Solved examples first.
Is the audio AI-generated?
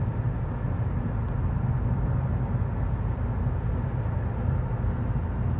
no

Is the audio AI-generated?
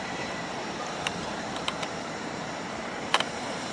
yes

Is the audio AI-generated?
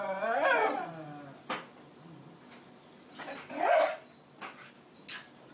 no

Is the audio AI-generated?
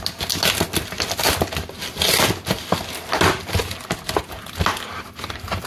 no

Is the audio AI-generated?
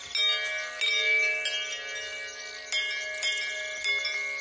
no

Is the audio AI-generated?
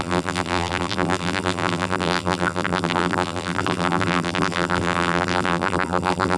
yes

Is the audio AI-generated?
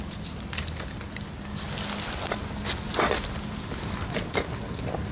no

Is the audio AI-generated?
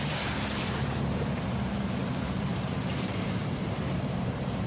yes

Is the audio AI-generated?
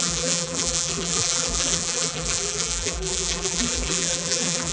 yes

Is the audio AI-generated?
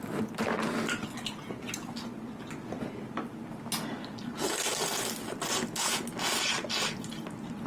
no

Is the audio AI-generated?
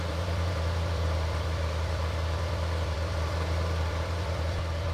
yes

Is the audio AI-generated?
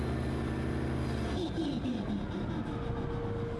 no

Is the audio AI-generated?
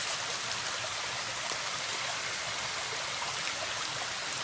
no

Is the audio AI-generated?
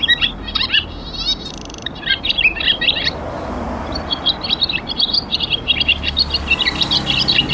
yes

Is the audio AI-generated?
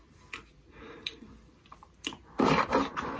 no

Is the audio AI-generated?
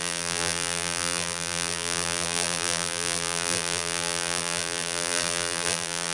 yes